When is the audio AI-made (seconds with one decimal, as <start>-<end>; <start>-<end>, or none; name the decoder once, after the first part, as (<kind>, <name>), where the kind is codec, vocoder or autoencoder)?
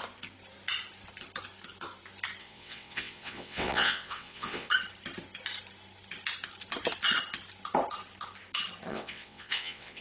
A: 2.4-4.7 (vocoder, WaveNeXt); 8.9-10.0